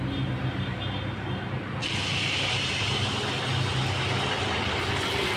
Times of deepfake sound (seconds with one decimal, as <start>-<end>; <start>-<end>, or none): 1.8-2.8